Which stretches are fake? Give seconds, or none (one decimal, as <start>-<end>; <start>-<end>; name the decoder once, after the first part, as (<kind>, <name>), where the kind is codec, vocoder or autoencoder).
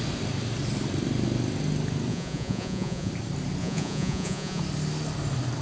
2.1-3.1 (vocoder, Vocos); 3.6-4.6